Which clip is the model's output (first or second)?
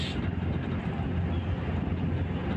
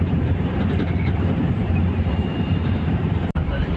second